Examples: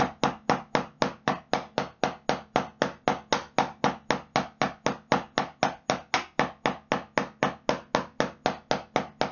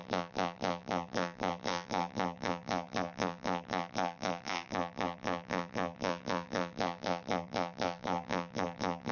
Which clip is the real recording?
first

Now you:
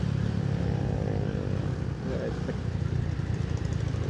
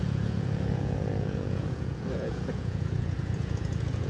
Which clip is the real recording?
first